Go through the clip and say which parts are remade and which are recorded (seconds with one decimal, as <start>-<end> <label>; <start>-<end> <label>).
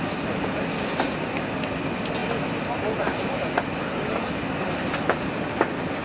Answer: 0.0-6.0 recorded